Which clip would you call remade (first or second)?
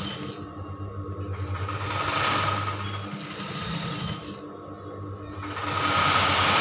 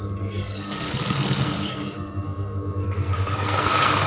second